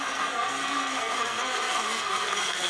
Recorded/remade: remade